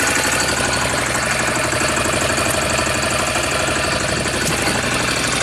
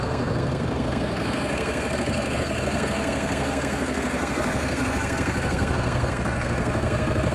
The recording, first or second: first